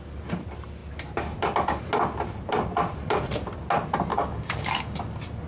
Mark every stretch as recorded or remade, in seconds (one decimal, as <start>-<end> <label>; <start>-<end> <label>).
0.0-4.1 recorded; 4.1-5.0 remade; 5.0-5.5 recorded